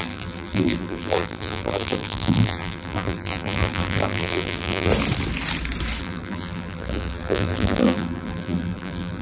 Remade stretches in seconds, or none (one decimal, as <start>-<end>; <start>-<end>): 0.0-4.9; 6.0-9.2